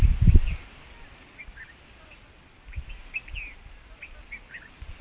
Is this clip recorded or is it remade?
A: recorded